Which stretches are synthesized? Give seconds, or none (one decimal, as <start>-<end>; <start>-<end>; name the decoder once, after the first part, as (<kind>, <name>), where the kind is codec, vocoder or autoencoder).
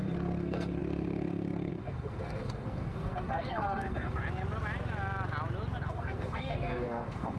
0.0-4.2 (codec, SNAC); 5.9-7.4